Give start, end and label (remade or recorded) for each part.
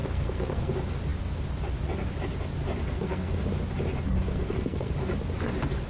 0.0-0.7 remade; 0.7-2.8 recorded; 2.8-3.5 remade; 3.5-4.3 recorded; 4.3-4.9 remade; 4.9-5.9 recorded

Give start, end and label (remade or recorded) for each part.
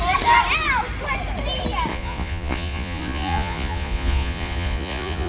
0.0-1.9 recorded; 1.9-5.3 remade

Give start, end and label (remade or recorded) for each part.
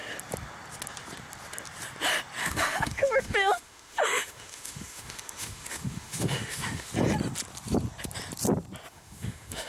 0.0-2.4 recorded; 2.4-6.9 remade; 6.9-8.9 recorded; 8.9-9.7 remade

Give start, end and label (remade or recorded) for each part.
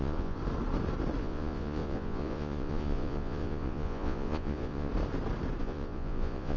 0.0-0.4 remade; 0.4-1.2 recorded; 1.2-4.9 remade; 4.9-5.6 recorded; 5.6-6.6 remade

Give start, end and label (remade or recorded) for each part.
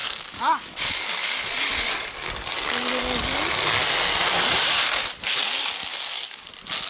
0.0-2.6 remade; 2.6-5.9 recorded; 5.9-6.5 remade; 6.5-6.9 recorded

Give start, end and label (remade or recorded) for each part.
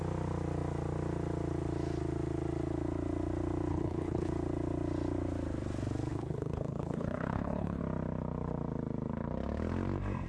0.0-3.7 recorded; 3.7-4.3 remade; 4.3-6.1 recorded; 6.1-7.8 remade; 7.8-10.3 recorded